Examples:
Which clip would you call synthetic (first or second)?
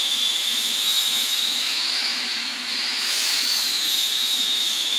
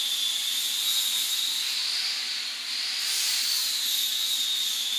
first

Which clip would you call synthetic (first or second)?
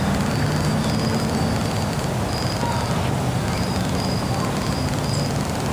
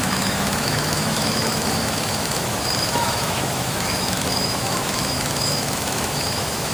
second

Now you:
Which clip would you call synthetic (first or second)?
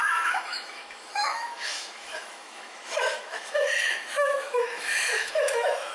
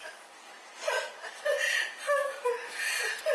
first